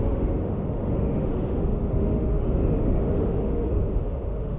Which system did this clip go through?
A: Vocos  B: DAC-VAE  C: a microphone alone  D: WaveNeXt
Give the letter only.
B